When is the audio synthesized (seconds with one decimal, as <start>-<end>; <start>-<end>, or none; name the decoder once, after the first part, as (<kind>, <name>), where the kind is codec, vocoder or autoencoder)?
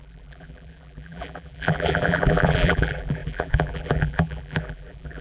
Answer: 0.0-5.2 (vocoder, BigVGAN v2)